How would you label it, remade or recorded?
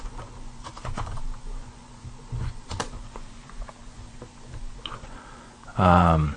remade